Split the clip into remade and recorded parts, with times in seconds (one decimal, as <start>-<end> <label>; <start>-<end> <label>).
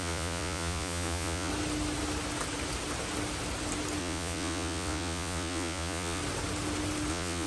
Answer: 0.0-1.5 remade; 1.5-4.0 recorded; 4.0-6.2 remade; 6.2-7.1 recorded; 7.1-7.5 remade